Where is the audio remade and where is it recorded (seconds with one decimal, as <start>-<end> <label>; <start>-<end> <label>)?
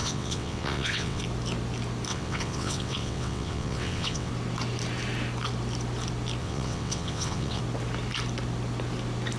0.0-1.2 remade; 1.2-2.1 recorded; 2.1-4.3 remade; 4.3-6.4 recorded; 6.4-7.6 remade; 7.6-9.4 recorded